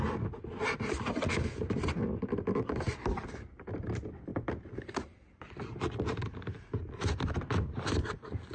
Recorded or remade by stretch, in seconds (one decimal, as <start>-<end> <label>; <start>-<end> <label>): 0.0-8.5 recorded